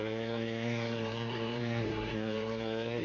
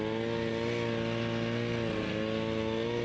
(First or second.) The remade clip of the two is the first